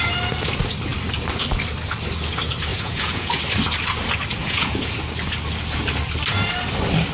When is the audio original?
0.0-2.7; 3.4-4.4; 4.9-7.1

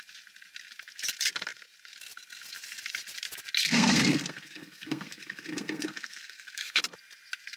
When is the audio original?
0.0-3.6; 6.8-7.6

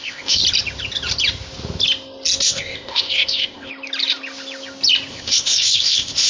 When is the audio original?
0.4-2.4; 3.7-5.1

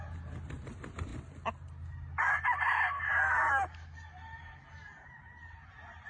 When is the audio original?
0.0-6.1

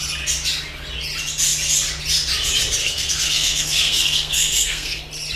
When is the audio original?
0.0-2.8; 5.0-5.4